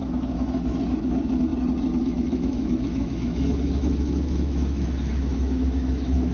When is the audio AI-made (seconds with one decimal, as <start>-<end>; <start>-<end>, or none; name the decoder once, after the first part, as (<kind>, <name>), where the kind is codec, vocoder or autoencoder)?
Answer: 0.0-1.5 (autoencoder, DAC-VAE); 2.0-6.3